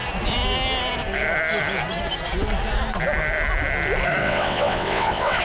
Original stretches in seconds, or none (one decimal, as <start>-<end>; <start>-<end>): 0.0-4.2